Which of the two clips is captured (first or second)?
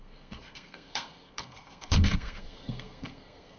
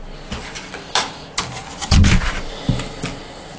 second